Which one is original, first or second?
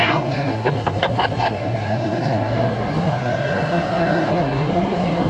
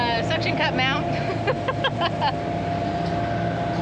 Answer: second